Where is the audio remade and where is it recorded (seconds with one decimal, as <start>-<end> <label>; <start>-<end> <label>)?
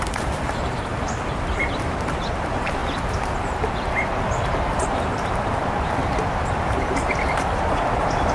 0.0-2.8 remade; 2.8-4.7 recorded; 4.7-5.6 remade; 5.6-6.4 recorded; 6.4-8.3 remade